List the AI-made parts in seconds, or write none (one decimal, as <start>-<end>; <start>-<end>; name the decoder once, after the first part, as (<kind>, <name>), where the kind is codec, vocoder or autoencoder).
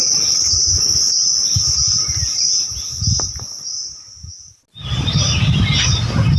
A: none